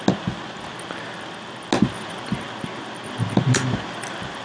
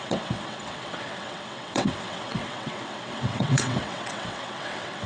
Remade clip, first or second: second